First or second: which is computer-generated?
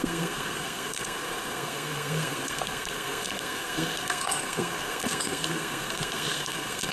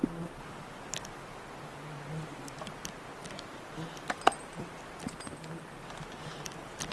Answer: first